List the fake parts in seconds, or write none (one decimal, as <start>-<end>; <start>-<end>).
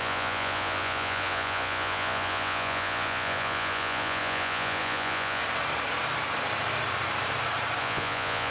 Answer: 0.0-5.4; 7.8-8.5